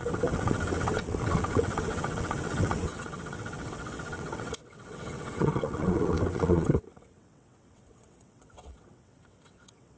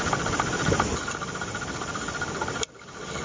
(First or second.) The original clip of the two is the second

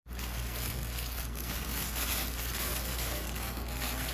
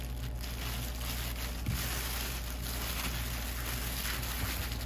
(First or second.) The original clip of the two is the second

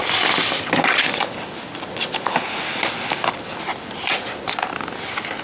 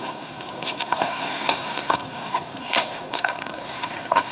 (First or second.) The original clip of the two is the first